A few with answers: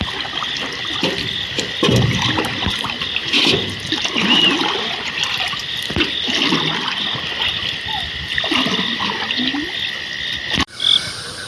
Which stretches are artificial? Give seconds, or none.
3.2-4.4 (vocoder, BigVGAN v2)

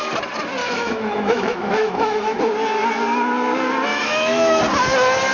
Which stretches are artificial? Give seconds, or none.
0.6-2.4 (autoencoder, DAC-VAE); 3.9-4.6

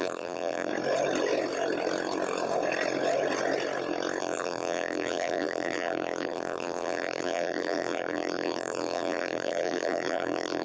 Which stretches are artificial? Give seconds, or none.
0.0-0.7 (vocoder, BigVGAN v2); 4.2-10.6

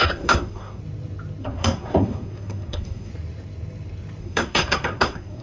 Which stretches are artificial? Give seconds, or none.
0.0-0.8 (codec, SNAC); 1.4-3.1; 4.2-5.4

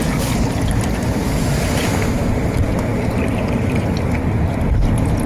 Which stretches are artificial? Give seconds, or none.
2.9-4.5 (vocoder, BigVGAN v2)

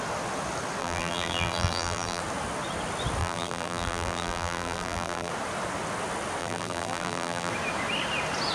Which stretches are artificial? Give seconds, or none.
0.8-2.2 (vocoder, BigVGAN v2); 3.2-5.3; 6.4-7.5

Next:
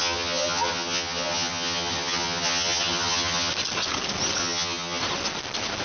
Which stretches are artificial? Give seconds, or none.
0.0-3.5 (vocoder, HiFi-GAN); 4.4-5.0